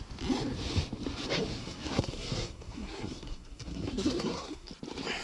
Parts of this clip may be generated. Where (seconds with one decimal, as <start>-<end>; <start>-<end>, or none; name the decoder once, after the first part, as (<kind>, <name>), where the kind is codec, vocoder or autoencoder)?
1.6-4.7 (codec, SNAC)